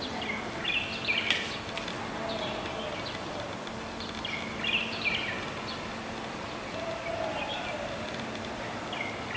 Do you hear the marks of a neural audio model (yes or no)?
no